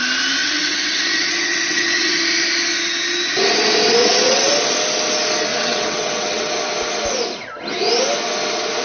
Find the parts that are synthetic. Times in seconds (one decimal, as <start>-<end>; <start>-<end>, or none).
0.4-2.2; 4.0-4.5; 5.5-6.5